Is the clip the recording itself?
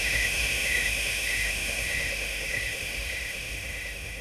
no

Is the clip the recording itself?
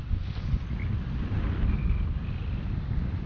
yes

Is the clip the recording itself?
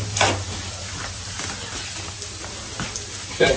yes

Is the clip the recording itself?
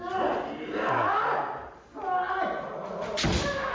yes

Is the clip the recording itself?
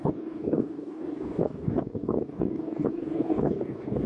no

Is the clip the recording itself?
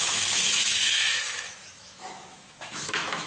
no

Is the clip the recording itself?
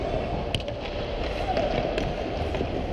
yes